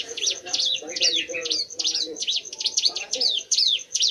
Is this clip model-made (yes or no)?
yes